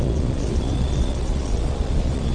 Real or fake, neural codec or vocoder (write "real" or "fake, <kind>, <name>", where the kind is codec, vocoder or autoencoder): fake, vocoder, Vocos